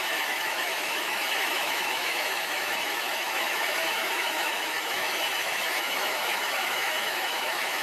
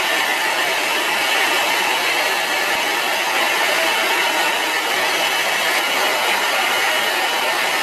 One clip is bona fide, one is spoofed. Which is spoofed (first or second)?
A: first